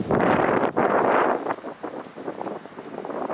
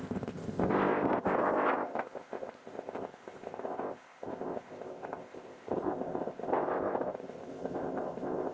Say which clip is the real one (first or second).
first